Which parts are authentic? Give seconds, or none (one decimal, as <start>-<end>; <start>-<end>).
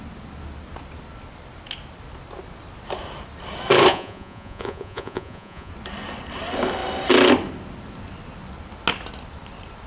0.0-3.9; 5.7-9.9